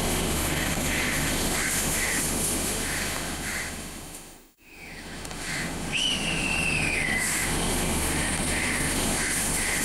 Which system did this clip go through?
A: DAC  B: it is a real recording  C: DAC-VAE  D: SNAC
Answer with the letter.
C